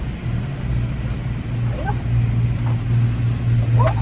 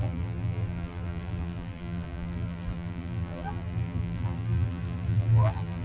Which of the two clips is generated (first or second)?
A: second